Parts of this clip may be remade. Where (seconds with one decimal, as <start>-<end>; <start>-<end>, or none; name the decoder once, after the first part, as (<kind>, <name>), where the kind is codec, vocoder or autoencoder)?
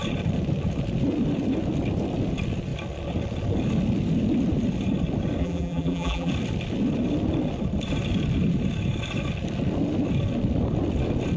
5.4-6.3 (vocoder, BigVGAN v2)